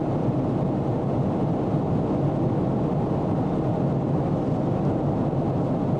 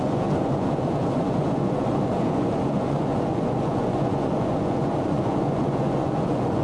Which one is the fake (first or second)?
second